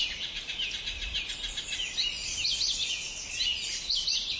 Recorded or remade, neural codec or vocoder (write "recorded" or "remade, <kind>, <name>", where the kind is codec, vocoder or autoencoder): recorded